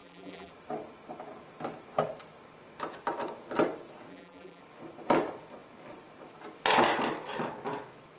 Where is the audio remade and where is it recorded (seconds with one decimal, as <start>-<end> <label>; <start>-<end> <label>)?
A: 0.0-0.5 remade; 0.5-4.1 recorded; 4.1-4.6 remade; 4.6-8.2 recorded